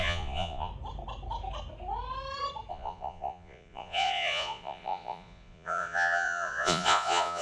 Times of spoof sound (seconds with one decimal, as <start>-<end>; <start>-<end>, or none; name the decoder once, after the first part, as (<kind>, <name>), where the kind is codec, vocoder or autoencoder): 0.0-0.7 (vocoder, Vocos); 2.7-7.4